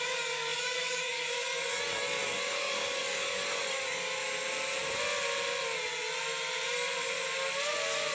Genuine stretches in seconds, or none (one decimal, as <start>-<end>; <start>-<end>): 4.2-8.1